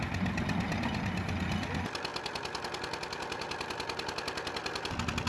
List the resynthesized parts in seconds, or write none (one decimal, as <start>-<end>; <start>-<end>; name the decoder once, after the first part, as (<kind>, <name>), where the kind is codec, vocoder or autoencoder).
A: none